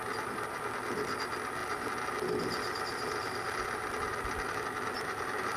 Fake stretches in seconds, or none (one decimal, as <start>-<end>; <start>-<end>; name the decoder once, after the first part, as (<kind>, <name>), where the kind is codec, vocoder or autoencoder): none

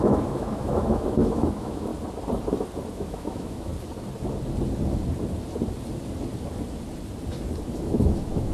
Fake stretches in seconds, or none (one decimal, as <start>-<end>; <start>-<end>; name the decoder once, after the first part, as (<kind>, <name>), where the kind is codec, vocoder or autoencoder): 0.0-1.9 (autoencoder, DAC-VAE); 2.9-3.7; 7.8-8.5

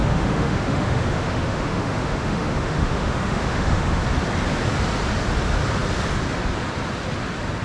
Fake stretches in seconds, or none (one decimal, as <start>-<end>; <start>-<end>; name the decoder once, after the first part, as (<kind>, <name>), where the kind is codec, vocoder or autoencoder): 0.0-4.0 (autoencoder, DAC-VAE)